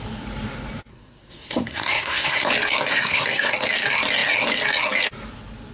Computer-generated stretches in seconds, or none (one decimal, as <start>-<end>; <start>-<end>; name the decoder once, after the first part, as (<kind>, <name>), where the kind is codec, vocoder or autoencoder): 0.9-2.5 (codec, SNAC); 2.9-3.5

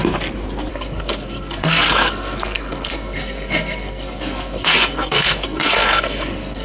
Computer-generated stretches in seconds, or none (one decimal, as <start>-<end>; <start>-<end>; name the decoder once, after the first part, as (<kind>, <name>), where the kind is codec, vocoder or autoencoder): 0.7-6.6 (codec, SNAC)

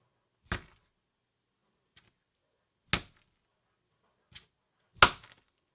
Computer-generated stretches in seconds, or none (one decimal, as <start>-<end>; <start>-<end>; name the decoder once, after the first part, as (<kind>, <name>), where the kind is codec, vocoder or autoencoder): none

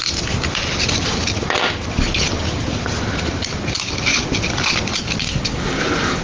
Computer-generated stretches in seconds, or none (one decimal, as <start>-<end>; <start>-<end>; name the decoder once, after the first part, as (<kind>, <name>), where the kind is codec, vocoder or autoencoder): 5.2-6.2 (codec, SNAC)

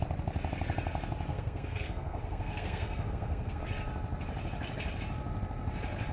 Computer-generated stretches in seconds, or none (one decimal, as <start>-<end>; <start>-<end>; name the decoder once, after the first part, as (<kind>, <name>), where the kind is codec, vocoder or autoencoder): 1.3-3.6 (codec, SNAC)

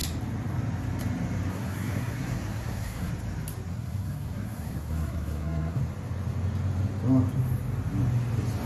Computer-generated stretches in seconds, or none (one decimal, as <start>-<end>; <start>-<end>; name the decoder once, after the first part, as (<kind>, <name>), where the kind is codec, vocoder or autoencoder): 1.5-3.1 (codec, SNAC); 3.7-5.8

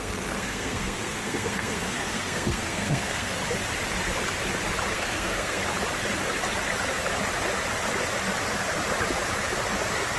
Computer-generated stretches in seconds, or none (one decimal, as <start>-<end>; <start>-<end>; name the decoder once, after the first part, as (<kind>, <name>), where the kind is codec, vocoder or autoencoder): 0.0-3.4 (codec, SNAC); 4.9-5.6